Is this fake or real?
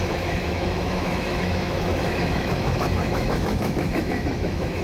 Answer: fake